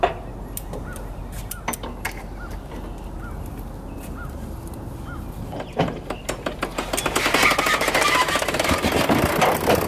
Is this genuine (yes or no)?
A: yes